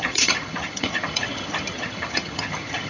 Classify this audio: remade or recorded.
remade